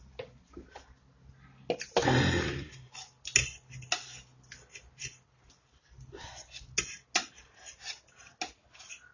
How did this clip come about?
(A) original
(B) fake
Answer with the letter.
A